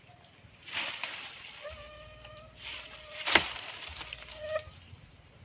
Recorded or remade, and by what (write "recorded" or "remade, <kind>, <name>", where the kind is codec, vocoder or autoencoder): remade, vocoder, BigVGAN v2